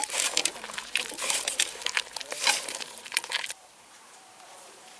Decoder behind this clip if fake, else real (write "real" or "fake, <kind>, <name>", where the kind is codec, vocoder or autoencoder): fake, vocoder, BigVGAN v2